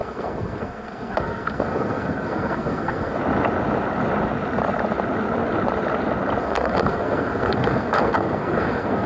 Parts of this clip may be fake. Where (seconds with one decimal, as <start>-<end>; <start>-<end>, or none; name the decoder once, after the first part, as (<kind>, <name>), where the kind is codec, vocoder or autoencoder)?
0.0-3.2 (codec, SNAC); 6.4-9.1